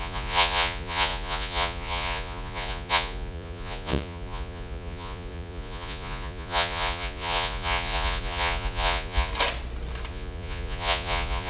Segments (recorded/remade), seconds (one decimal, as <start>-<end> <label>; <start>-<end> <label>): 0.0-9.3 remade; 9.3-10.1 recorded; 10.1-11.5 remade